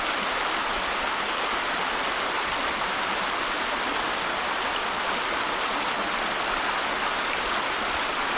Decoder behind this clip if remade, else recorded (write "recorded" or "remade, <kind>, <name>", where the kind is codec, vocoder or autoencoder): recorded